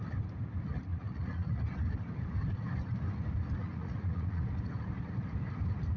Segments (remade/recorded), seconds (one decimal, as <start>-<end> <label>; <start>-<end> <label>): 0.0-0.9 recorded; 0.9-1.6 remade; 1.6-3.6 recorded; 3.6-4.4 remade; 4.4-6.0 recorded